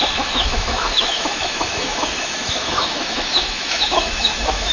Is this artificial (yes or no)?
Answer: yes